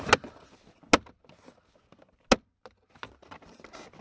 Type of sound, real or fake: real